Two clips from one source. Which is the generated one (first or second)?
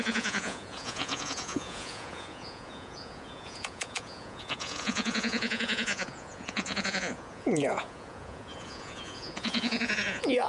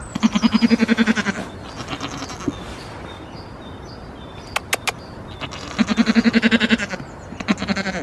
first